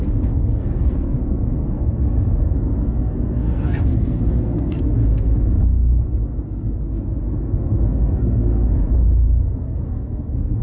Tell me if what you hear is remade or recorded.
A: remade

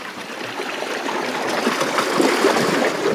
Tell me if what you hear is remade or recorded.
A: recorded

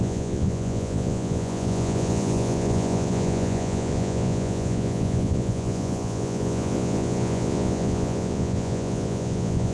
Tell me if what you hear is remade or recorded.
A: remade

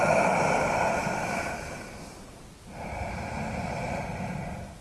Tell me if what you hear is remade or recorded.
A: recorded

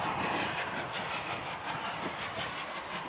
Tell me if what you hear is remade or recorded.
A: recorded